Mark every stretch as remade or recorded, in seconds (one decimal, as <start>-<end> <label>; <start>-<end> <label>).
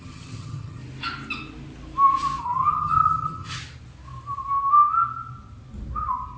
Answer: 0.0-0.8 remade; 0.8-2.4 recorded; 2.4-3.6 remade; 3.6-6.4 recorded